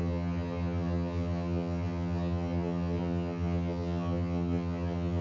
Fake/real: fake